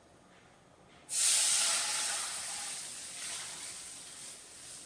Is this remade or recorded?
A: recorded